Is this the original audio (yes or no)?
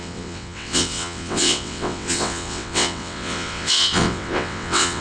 no